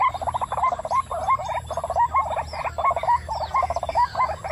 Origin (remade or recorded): recorded